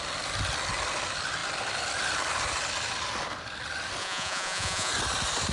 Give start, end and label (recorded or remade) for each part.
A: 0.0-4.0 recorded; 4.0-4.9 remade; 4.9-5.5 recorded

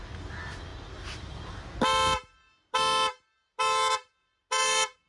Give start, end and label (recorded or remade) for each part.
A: 0.0-5.1 recorded

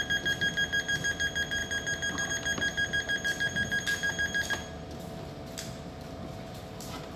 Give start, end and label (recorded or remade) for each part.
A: 0.0-7.2 recorded

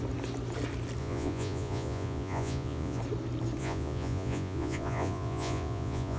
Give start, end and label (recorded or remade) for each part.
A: 0.0-1.0 recorded; 1.0-3.0 remade; 3.0-3.6 recorded; 3.6-6.2 remade

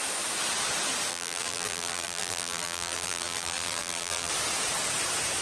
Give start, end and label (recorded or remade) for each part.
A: 0.0-1.1 recorded; 1.1-4.3 remade; 4.3-5.4 recorded

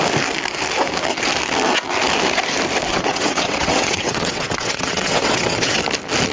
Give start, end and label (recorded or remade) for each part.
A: 0.0-2.9 recorded; 2.9-5.8 remade; 5.8-6.3 recorded